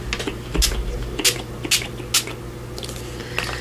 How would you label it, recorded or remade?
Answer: recorded